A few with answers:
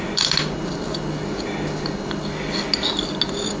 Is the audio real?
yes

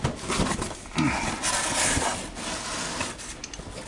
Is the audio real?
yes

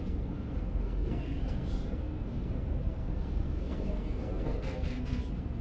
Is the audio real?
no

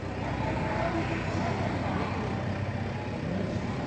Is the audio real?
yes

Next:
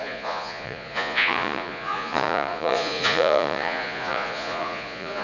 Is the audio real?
no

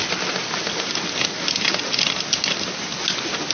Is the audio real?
yes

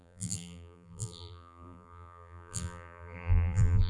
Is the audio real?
no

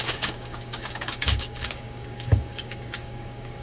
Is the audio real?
no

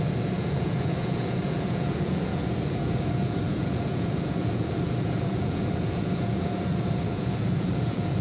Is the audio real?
no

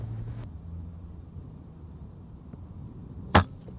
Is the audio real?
no